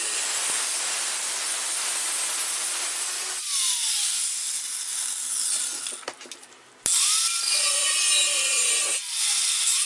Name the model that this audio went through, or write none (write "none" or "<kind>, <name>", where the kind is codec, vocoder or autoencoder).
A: none